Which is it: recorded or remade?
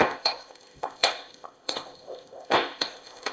remade